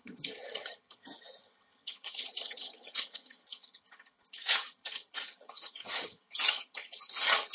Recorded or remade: remade